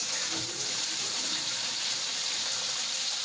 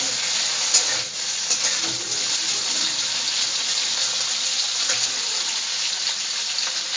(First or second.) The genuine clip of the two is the second